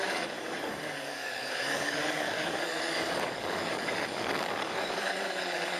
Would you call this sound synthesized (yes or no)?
yes